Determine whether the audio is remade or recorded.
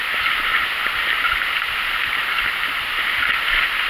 recorded